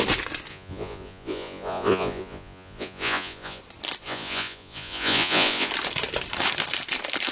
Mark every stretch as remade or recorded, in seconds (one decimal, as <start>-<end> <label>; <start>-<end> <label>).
0.0-0.5 recorded; 0.5-3.6 remade; 3.6-4.0 recorded; 4.0-5.7 remade; 5.7-7.3 recorded